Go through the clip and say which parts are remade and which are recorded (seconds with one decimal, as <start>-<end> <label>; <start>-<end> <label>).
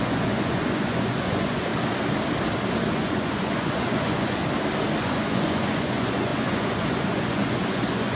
0.0-1.7 remade; 1.7-2.9 recorded; 2.9-4.4 remade; 4.4-5.0 recorded; 5.0-8.2 remade